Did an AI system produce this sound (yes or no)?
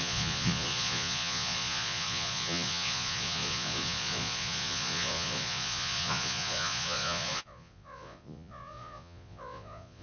yes